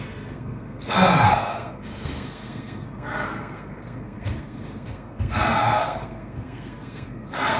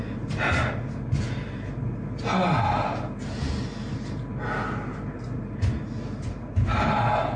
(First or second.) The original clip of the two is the second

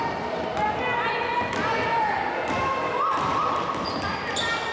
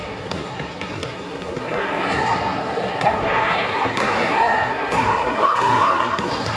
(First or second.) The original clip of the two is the first